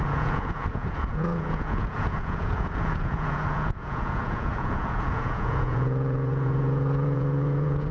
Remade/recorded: remade